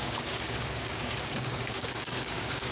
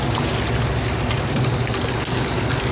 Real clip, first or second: second